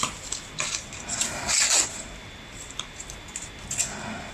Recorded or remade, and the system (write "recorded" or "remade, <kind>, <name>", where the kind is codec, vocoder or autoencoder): recorded